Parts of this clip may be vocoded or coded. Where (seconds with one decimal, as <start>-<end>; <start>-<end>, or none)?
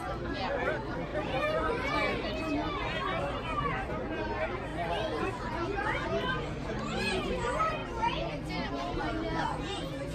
none